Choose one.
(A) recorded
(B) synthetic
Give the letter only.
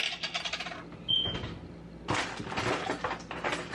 A